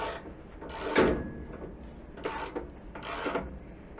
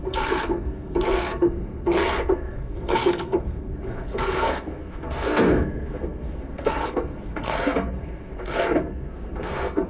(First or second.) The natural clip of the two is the first